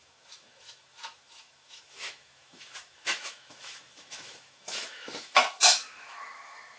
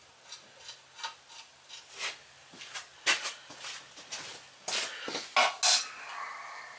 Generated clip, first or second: first